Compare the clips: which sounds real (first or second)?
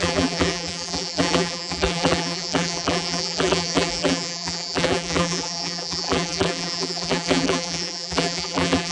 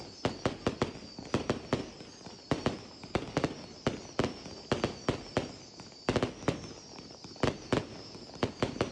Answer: second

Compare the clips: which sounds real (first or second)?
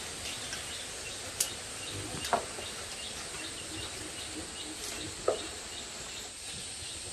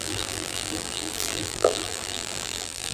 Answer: first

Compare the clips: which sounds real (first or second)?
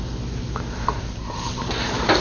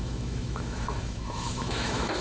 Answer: first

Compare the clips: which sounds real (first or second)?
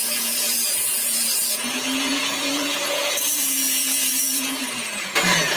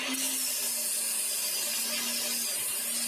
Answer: second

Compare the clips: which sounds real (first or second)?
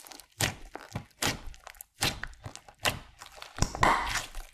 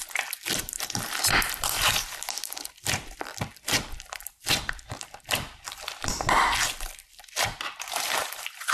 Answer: first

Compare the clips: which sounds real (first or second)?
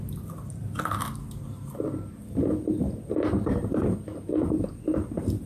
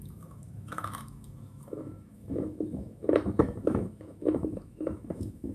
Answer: first